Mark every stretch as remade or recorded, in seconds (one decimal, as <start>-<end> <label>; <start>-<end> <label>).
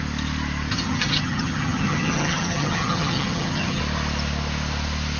0.0-0.7 recorded; 0.7-3.8 remade; 3.8-5.2 recorded